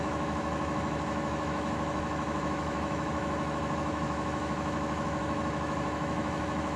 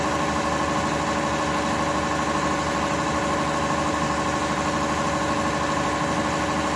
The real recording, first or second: second